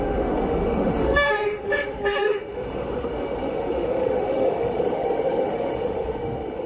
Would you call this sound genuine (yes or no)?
no